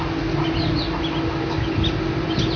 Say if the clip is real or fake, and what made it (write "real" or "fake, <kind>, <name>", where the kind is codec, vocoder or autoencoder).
real